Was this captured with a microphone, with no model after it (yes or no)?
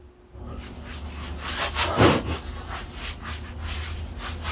yes